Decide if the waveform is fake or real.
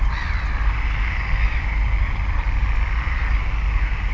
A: real